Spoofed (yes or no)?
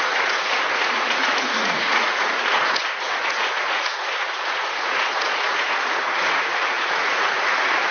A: yes